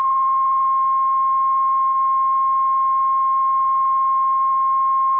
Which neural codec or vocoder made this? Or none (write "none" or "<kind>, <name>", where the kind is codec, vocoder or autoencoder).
none